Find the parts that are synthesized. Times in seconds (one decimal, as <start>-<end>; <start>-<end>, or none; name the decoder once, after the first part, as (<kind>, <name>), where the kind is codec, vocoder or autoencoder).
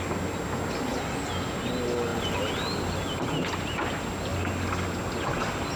none